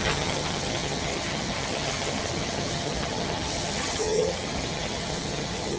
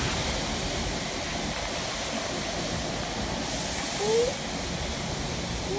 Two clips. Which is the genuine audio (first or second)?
second